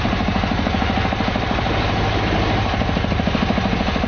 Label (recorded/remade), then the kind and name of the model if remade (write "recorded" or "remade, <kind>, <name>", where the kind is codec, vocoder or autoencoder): recorded